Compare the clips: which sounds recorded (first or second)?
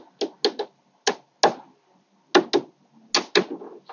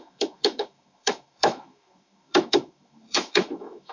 first